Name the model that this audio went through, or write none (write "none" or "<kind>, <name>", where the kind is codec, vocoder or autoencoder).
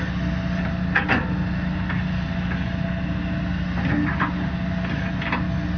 none